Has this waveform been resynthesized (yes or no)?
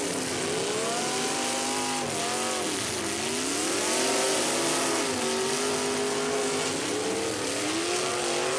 no